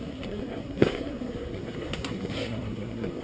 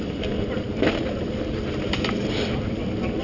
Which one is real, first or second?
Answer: second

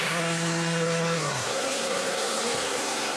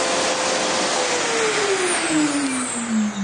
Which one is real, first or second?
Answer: second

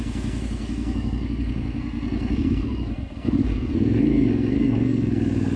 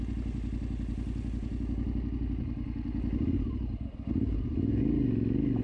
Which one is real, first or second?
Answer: second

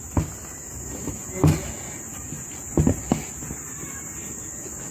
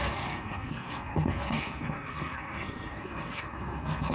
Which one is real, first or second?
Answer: first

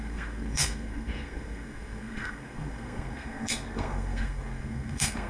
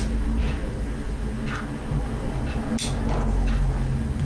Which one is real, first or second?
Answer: second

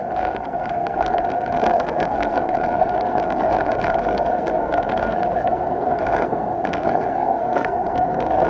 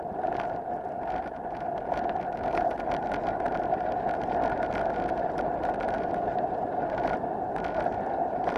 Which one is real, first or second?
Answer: second